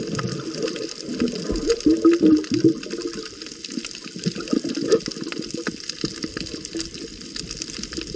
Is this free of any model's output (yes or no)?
yes